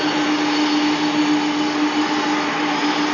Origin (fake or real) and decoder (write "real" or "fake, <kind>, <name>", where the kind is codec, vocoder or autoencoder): real